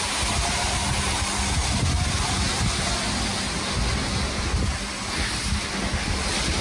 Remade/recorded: recorded